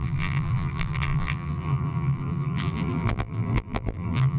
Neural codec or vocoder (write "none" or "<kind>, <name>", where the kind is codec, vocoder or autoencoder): vocoder, BigVGAN v2